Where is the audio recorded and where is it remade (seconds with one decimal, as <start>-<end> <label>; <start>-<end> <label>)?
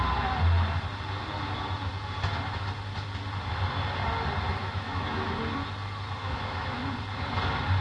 0.0-4.6 recorded; 4.6-5.4 remade; 5.4-6.2 recorded; 6.2-6.8 remade; 6.8-7.8 recorded